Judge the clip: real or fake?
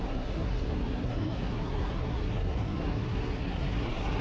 fake